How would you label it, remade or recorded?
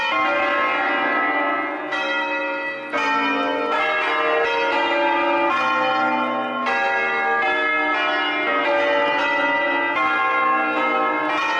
recorded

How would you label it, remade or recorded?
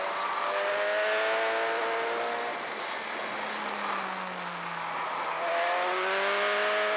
recorded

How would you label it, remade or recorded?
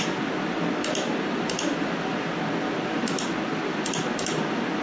recorded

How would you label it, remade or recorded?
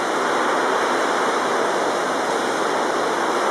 recorded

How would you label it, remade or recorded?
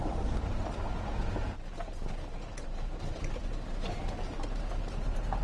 recorded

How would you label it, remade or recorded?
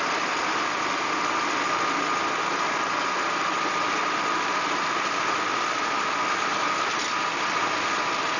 recorded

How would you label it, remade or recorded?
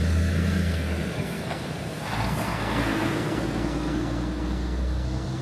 remade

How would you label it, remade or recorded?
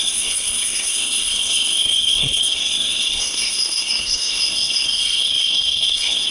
remade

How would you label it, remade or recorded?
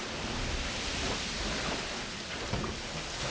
recorded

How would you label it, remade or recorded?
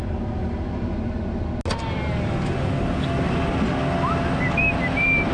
recorded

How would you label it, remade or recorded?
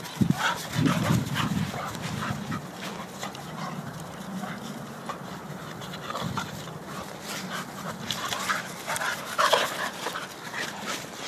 recorded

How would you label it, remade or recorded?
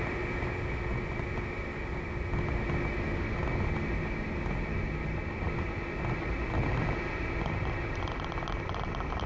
recorded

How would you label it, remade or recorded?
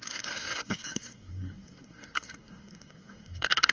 remade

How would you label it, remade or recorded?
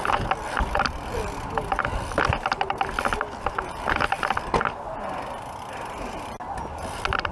recorded